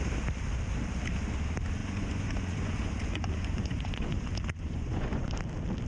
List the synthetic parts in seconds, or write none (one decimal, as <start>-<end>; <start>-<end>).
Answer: 1.8-5.3